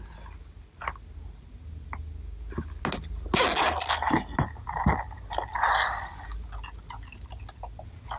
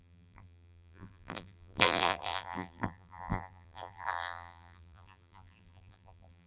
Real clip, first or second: first